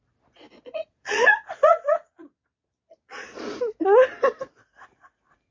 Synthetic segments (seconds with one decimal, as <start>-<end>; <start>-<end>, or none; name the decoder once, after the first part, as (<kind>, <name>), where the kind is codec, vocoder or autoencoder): 0.5-3.4 (vocoder, Vocos)